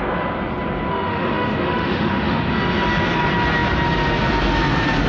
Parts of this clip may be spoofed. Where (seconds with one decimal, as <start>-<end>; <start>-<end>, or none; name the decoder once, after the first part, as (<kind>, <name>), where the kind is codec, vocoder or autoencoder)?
0.9-2.5 (autoencoder, DAC-VAE)